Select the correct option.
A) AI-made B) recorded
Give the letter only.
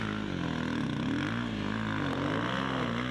B